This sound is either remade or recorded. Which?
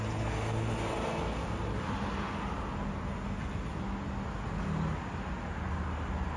recorded